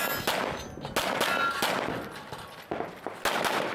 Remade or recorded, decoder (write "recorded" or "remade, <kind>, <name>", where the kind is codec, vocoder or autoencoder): recorded